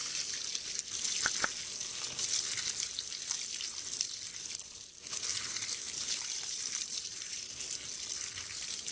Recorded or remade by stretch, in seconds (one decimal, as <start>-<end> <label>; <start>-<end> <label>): 0.0-0.6 remade; 0.6-5.3 recorded; 5.3-7.5 remade; 7.5-8.9 recorded